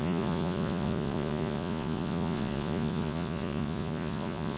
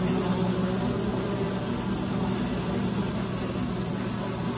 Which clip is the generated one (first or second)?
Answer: first